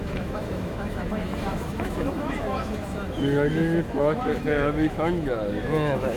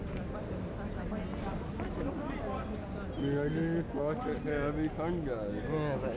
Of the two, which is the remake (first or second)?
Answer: first